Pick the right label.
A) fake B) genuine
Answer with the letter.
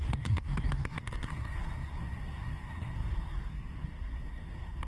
A